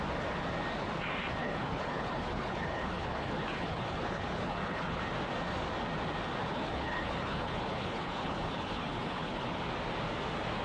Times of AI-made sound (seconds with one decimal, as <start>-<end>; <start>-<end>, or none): 1.4-5.0; 6.4-9.6